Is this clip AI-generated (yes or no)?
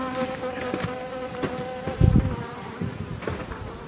yes